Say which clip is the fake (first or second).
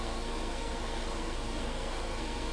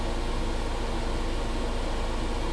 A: first